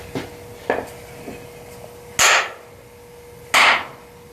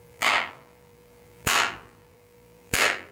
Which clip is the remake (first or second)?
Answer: second